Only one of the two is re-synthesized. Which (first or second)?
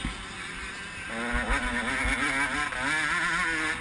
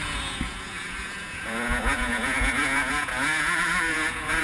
second